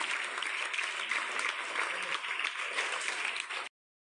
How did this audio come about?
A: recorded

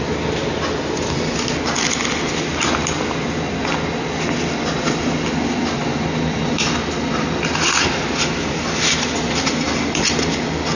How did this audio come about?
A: recorded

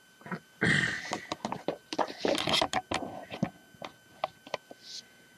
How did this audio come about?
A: recorded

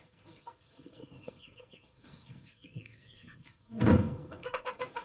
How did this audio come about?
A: remade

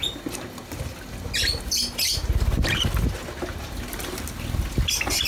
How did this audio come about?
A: recorded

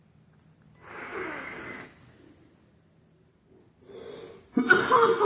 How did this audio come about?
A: recorded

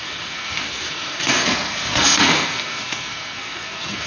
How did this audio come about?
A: remade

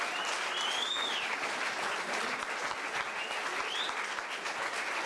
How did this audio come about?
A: recorded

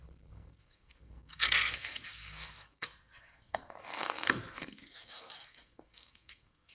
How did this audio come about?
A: remade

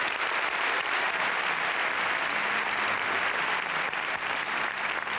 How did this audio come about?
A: recorded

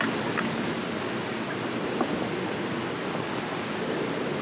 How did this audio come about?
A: recorded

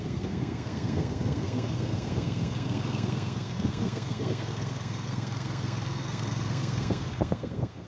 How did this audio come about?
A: remade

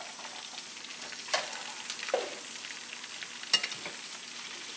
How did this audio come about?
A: recorded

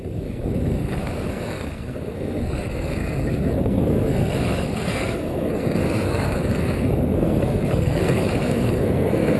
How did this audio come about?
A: remade